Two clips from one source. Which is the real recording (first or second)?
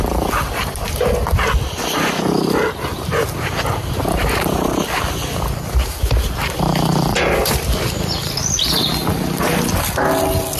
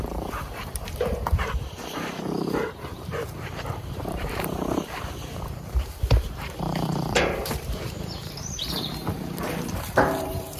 first